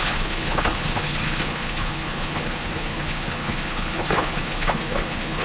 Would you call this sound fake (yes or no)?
yes